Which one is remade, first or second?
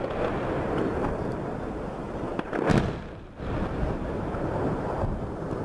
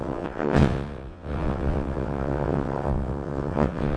second